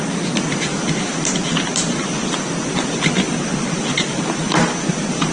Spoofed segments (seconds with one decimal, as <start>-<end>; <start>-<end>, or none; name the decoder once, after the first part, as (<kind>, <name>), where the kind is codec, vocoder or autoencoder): none